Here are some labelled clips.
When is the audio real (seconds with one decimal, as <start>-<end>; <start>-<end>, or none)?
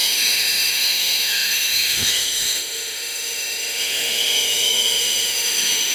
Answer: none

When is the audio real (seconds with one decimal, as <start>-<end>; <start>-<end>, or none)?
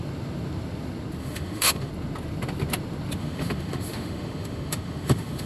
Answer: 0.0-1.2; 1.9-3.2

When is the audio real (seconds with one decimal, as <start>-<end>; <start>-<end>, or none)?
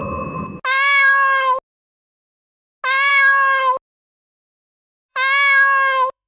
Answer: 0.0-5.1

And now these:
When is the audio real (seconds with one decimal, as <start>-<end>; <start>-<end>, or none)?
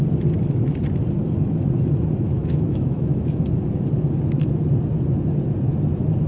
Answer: 0.0-2.4; 3.4-6.3